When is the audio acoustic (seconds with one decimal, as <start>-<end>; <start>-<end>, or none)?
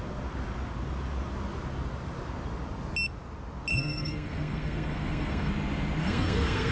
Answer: 0.0-3.7; 5.5-6.0